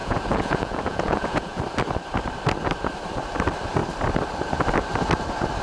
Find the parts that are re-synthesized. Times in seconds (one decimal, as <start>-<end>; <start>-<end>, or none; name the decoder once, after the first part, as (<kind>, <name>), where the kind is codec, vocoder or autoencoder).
0.0-1.6 (vocoder, Vocos)